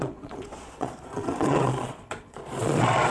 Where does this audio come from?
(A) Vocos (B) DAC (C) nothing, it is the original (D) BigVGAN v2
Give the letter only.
A